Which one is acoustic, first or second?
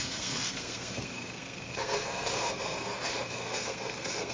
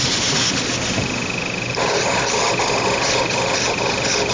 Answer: second